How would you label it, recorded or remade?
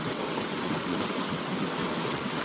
remade